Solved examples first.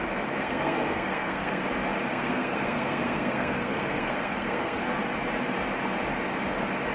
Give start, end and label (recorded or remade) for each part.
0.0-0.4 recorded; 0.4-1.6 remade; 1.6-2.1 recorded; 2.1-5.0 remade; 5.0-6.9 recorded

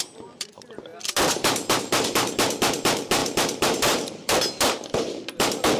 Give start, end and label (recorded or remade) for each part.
0.0-0.9 remade; 0.9-1.8 recorded; 1.8-5.8 remade

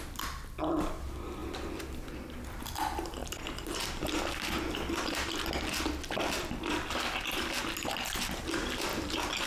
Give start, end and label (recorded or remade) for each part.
0.0-8.9 recorded; 8.9-9.5 remade

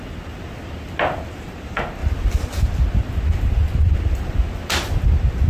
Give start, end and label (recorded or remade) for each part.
0.0-5.5 recorded

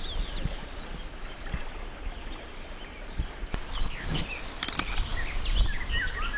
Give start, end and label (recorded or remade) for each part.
0.0-6.4 recorded

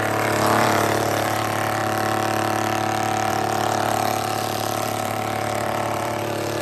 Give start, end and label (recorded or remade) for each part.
0.0-1.8 remade; 1.8-3.3 recorded; 3.3-6.6 remade

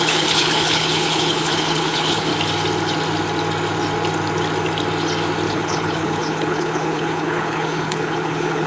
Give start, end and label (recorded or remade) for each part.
0.0-2.3 remade; 2.3-5.5 recorded; 5.5-8.7 remade